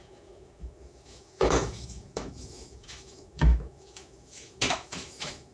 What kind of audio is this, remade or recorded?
remade